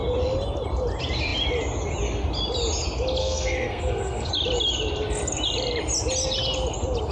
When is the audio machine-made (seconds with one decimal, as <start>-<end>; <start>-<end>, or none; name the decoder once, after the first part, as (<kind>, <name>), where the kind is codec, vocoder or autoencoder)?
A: 3.2-4.3 (codec, SNAC)

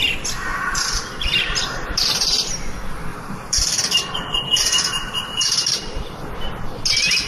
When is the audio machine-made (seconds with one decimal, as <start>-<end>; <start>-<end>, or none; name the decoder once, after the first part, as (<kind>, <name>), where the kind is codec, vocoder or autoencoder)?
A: 0.5-2.5 (vocoder, BigVGAN v2); 3.1-6.3

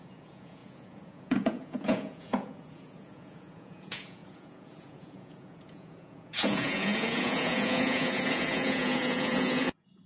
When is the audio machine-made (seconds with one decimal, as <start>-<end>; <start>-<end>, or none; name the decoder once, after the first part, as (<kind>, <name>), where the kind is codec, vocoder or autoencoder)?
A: 0.0-10.1 (vocoder, Vocos)

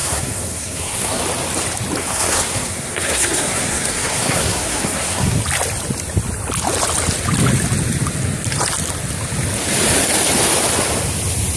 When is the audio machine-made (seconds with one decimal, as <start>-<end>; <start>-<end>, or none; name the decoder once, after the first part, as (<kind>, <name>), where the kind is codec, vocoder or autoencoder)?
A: 0.0-1.2 (codec, SNAC); 2.0-5.4